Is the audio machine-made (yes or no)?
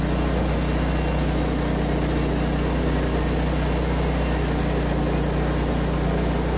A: no